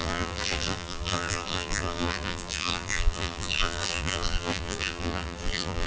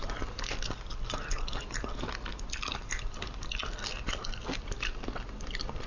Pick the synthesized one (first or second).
first